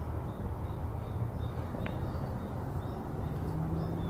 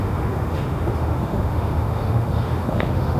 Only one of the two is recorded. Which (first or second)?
first